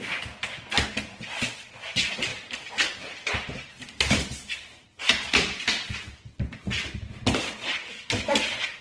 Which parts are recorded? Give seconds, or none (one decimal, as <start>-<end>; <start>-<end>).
0.0-2.3; 5.6-8.8